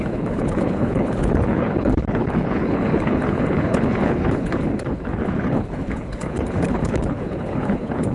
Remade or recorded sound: remade